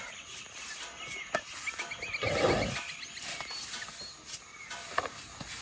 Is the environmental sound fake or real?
real